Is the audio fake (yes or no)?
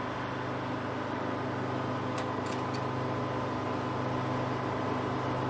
no